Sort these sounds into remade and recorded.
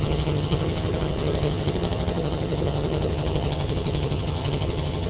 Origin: remade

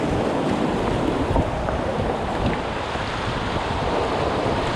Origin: recorded